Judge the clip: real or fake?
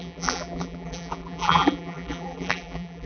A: fake